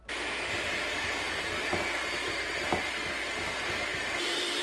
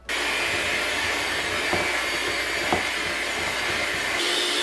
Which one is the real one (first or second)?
second